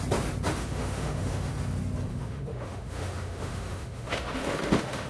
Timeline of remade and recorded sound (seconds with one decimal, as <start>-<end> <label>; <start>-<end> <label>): 0.0-0.5 recorded; 0.5-1.5 remade; 1.5-2.1 recorded; 2.1-5.1 remade